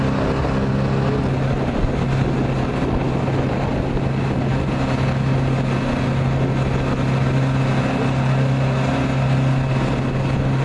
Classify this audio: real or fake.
real